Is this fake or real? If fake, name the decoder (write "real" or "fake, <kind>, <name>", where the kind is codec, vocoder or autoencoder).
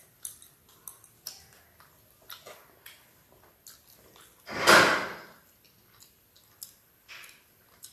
real